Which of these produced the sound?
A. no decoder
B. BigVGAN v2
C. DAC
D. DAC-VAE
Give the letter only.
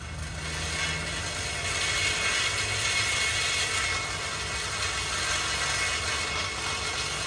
A